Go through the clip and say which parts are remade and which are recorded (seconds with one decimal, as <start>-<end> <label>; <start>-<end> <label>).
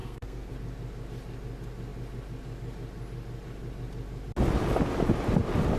0.0-0.5 remade; 0.5-5.8 recorded